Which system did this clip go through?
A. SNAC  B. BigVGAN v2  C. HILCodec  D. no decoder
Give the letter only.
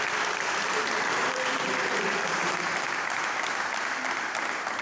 D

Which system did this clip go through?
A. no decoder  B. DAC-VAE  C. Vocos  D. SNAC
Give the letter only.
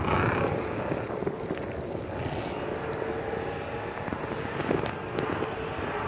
A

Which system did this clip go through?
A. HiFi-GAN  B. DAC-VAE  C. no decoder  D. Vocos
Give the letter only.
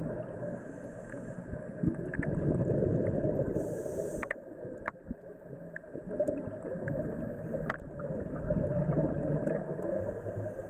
C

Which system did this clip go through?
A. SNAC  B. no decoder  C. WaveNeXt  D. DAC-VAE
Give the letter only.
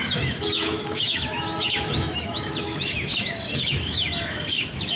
D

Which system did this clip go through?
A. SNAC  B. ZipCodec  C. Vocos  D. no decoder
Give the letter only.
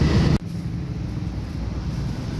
D